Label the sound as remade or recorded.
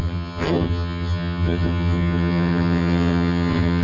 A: remade